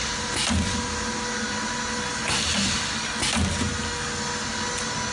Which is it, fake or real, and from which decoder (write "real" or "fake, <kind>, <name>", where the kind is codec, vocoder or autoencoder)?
real